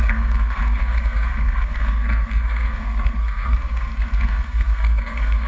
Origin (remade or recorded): remade